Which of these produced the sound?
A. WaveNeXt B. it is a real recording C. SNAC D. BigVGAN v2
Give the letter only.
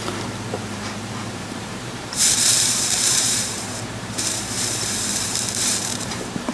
D